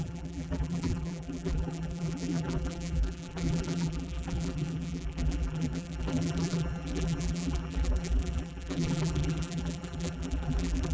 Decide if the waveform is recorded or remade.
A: remade